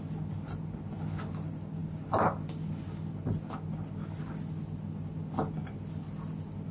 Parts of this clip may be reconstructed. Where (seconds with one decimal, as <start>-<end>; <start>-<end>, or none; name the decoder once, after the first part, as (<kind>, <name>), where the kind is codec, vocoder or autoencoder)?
none